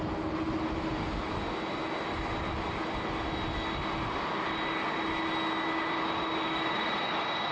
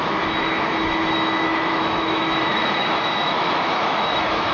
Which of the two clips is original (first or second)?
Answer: first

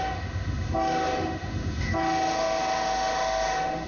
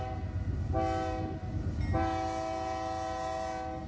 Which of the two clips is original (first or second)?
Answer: second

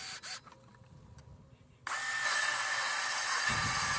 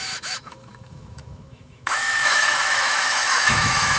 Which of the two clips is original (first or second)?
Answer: first